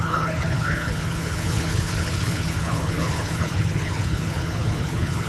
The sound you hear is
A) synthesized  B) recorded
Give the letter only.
A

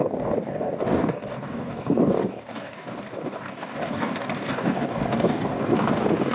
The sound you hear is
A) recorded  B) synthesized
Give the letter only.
B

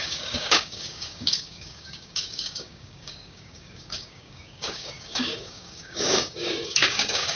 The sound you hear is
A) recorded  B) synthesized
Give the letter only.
B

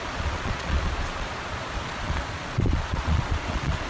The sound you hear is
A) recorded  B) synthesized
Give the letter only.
B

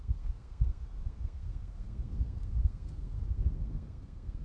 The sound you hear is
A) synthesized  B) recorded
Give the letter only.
A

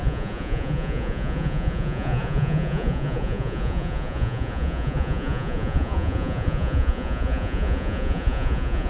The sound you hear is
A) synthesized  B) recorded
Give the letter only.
A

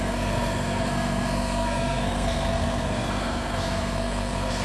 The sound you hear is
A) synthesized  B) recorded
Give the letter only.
A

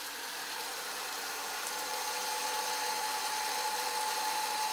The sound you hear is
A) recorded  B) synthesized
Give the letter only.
B